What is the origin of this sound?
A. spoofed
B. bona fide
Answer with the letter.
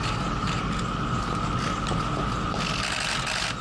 B